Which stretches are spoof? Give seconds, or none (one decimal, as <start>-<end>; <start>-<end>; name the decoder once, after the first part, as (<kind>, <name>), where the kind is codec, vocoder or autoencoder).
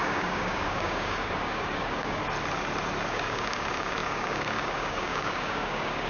0.0-2.2 (codec, DAC); 3.1-6.1